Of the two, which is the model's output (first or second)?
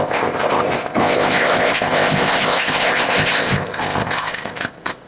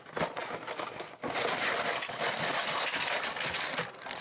first